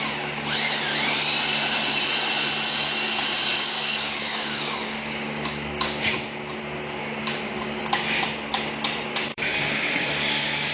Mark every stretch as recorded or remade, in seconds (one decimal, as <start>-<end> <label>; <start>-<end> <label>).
0.0-3.4 recorded; 3.4-6.1 remade; 6.1-7.0 recorded; 7.0-7.8 remade; 7.8-9.3 recorded; 9.3-10.7 remade